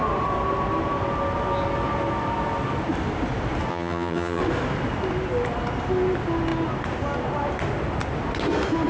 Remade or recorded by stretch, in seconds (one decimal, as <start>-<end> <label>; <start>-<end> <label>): 0.0-3.7 recorded; 3.7-4.4 remade; 4.4-8.9 recorded